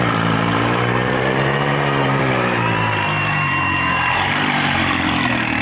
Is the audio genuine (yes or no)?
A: no